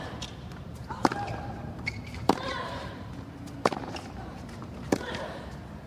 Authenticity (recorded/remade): remade